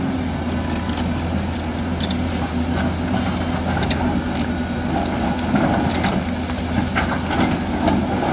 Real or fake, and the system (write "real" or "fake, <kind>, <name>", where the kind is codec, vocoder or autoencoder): real